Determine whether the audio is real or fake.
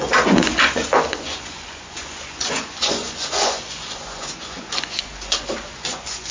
fake